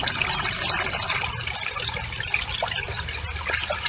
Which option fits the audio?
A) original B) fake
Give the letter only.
A